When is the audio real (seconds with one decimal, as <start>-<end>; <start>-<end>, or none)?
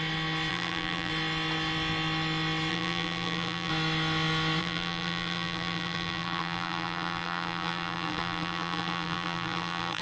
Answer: 0.0-0.5; 1.1-2.7; 3.7-4.6